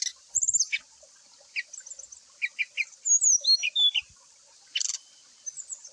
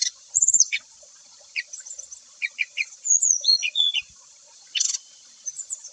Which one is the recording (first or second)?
first